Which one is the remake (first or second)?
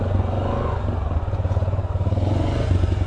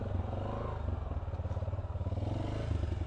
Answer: first